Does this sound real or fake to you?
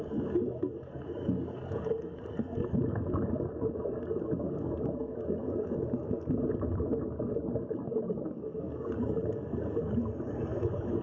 fake